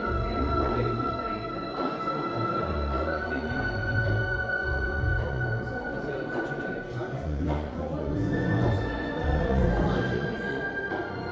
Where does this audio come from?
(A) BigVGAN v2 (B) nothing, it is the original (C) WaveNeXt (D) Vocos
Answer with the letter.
D